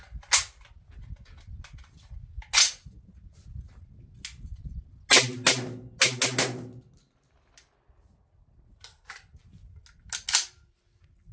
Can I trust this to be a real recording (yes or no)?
yes